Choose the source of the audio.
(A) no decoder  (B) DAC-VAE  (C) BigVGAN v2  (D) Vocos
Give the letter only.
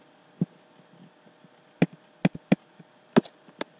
A